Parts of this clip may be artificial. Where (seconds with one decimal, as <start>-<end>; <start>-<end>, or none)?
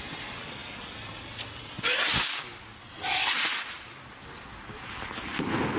none